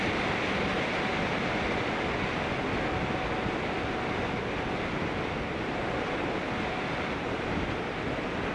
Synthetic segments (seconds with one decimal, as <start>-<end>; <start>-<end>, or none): 0.7-1.3